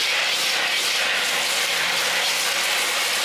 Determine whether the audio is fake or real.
real